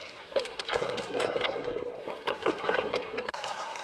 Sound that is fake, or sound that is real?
fake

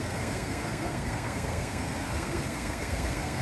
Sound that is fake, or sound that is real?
fake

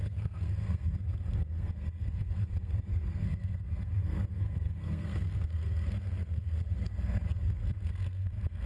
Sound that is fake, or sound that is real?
fake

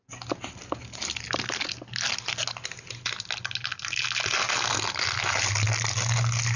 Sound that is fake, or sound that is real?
real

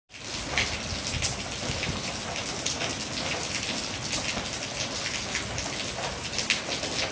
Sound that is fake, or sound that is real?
real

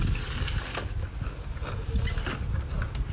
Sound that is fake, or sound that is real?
real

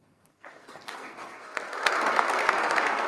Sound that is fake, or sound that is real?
fake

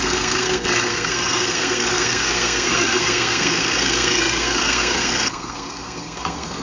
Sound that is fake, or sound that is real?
fake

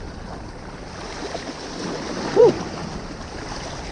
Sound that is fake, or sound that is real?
real